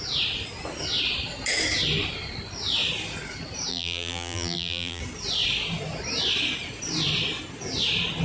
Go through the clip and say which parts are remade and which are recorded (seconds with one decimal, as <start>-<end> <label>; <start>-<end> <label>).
0.0-3.7 recorded; 3.7-5.0 remade; 5.0-8.2 recorded